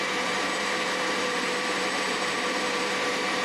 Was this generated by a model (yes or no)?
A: yes